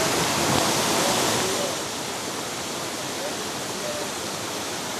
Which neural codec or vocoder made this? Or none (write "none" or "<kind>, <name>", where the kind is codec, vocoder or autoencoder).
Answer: none